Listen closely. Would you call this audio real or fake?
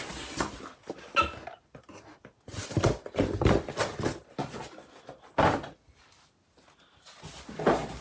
real